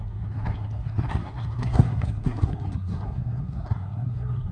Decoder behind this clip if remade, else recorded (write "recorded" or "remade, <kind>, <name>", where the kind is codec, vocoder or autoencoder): remade, codec, SNAC